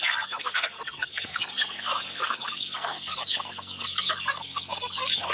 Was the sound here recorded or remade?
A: remade